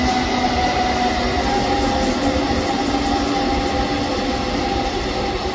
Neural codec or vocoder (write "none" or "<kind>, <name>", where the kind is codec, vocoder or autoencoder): none